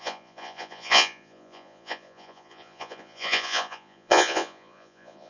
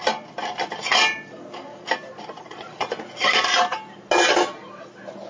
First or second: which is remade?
first